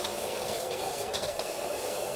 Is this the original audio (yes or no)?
no